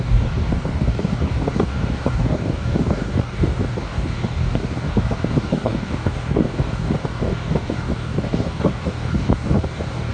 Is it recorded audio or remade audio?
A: remade